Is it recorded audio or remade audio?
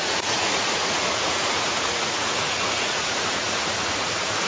remade